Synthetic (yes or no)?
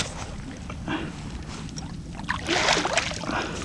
no